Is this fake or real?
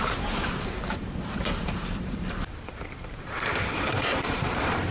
fake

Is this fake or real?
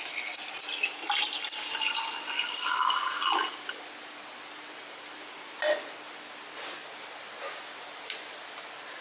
real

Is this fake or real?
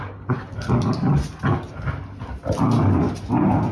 real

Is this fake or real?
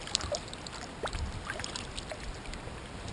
real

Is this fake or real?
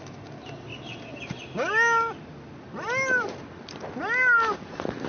real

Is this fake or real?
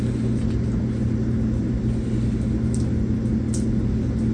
real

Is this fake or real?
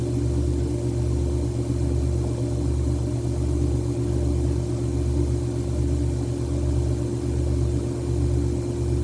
real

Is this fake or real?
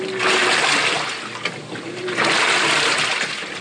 real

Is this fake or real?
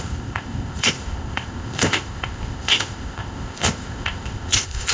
fake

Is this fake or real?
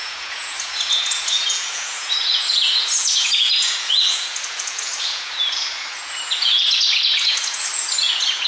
fake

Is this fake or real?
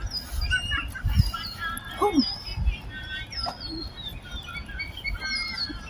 real